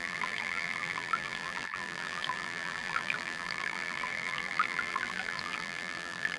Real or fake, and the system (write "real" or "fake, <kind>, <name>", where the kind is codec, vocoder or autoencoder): fake, vocoder, BigVGAN v2